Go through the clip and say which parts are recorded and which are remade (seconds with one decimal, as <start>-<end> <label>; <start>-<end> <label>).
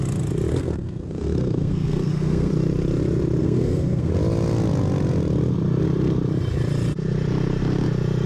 0.0-0.5 recorded; 0.5-2.5 remade; 2.5-3.4 recorded; 3.4-4.1 remade; 4.1-8.3 recorded